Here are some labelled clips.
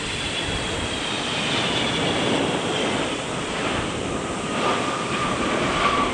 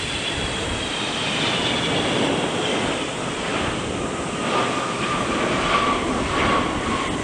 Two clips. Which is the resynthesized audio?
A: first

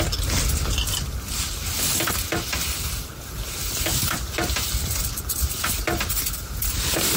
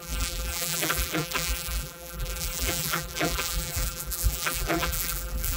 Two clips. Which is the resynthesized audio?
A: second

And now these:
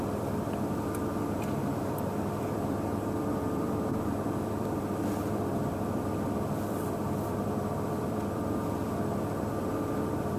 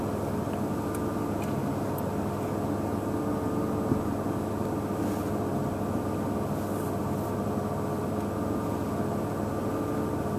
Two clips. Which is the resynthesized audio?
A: first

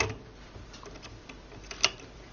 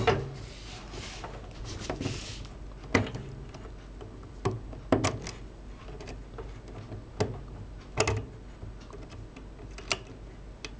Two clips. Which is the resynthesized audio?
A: first